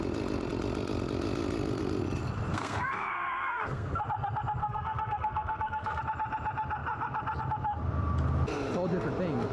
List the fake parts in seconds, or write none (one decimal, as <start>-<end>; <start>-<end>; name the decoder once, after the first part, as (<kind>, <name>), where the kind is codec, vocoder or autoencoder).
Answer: 2.5-4.0 (codec, SNAC); 4.6-6.0